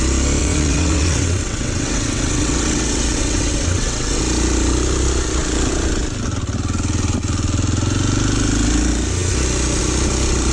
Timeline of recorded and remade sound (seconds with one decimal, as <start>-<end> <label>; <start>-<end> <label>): 0.0-0.4 recorded; 0.4-4.2 remade; 4.2-10.5 recorded